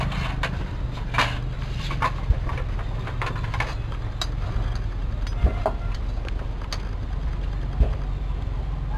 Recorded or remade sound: recorded